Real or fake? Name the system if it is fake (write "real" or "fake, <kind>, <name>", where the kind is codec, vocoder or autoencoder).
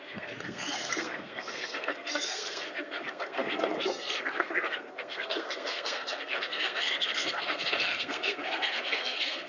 fake, codec, SNAC